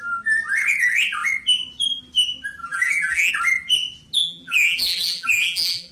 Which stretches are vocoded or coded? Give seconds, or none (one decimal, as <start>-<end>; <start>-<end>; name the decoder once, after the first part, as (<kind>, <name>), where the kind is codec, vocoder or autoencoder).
2.6-3.3 (vocoder, BigVGAN v2); 4.2-5.9